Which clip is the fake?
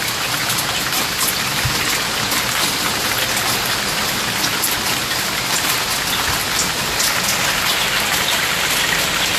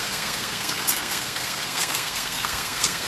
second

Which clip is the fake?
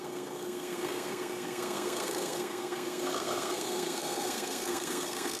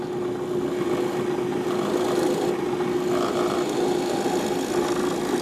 first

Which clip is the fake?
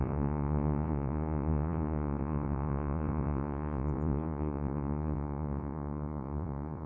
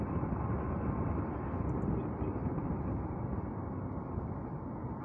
first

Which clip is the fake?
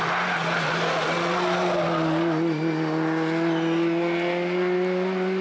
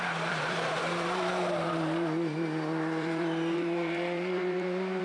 second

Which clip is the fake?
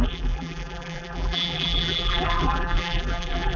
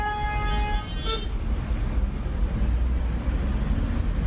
first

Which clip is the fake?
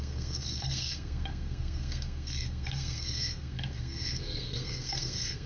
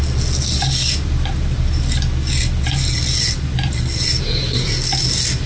first